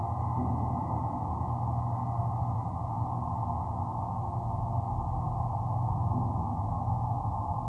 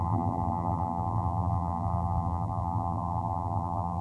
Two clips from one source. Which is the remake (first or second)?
second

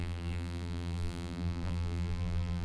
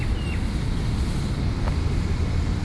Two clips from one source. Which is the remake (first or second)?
first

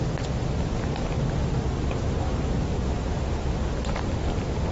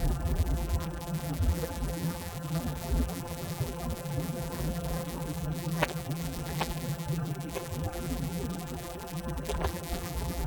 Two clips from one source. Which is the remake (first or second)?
second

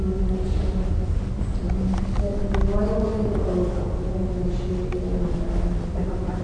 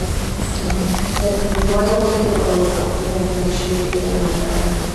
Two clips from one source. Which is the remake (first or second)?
second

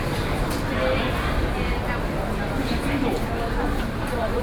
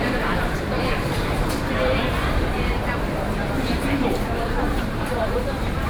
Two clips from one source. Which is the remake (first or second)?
second